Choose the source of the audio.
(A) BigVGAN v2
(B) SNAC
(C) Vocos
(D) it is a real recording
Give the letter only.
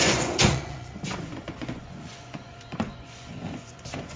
C